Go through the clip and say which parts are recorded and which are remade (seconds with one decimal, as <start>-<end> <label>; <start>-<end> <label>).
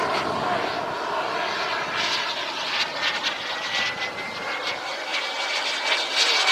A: 0.0-5.1 recorded; 5.1-6.1 remade; 6.1-6.5 recorded